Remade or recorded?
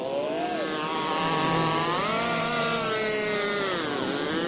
recorded